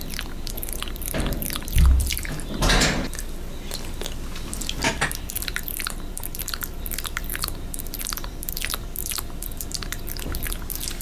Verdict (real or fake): fake